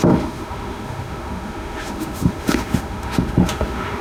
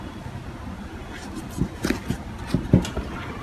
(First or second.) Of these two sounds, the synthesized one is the first